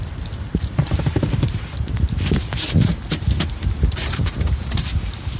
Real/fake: fake